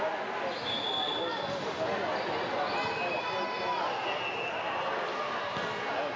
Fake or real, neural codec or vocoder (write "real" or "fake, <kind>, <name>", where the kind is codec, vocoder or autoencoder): real